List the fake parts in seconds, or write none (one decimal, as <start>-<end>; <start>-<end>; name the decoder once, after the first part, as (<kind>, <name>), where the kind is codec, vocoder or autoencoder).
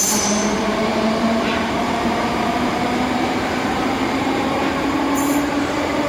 0.0-6.1 (vocoder, BigVGAN v2)